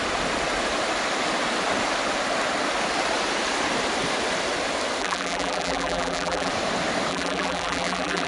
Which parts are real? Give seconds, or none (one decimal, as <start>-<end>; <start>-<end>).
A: 0.0-5.0; 6.5-7.1